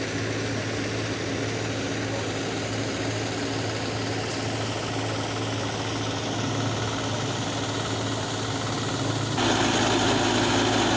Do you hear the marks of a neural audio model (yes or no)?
no